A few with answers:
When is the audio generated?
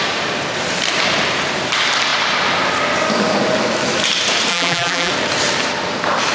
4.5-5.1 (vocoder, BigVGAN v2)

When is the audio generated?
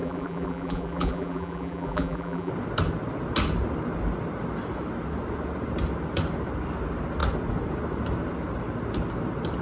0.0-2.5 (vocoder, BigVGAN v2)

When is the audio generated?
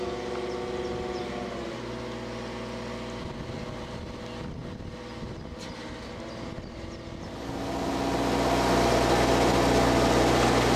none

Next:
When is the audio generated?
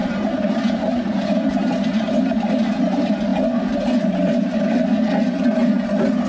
0.0-2.2 (vocoder, BigVGAN v2)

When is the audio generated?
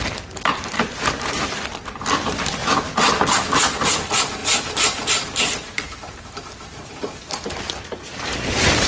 0.5-1.6 (vocoder, BigVGAN v2); 2.6-3.2; 4.4-8.9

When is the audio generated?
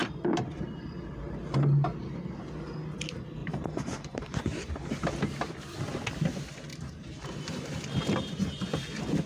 0.0-1.4 (vocoder, BigVGAN v2); 1.9-2.4; 3.4-4.7; 6.7-7.7